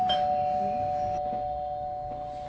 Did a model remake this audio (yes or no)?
no